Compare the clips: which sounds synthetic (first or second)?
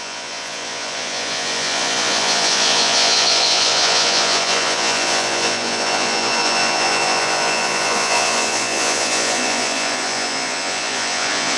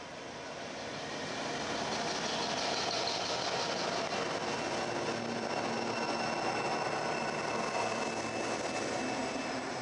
first